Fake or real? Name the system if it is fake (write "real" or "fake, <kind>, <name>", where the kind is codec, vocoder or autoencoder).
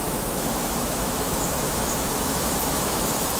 fake, autoencoder, DAC-VAE